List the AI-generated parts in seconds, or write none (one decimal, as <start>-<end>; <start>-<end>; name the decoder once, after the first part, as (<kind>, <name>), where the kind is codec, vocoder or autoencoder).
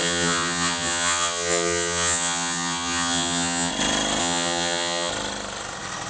0.0-3.7 (vocoder, HiFi-GAN); 4.2-5.1